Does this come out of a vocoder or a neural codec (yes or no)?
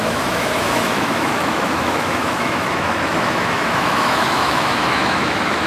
yes